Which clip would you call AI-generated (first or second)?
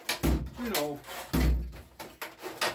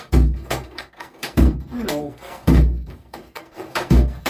second